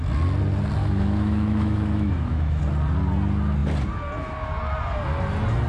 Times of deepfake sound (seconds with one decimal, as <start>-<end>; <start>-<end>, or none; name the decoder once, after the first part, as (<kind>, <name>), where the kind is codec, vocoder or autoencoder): 0.8-2.6 (autoencoder, DAC-VAE)